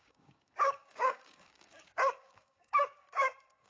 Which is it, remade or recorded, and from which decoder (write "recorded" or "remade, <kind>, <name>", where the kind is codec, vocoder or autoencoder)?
remade, codec, DAC